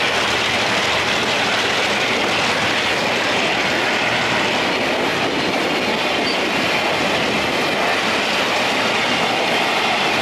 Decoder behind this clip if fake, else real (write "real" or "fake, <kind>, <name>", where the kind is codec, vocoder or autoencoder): real